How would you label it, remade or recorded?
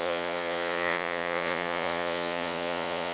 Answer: remade